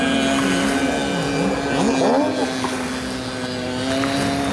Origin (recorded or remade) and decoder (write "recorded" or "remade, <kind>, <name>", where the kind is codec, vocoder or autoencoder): recorded